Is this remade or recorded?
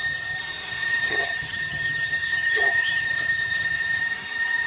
remade